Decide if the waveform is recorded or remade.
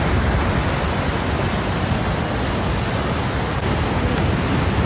recorded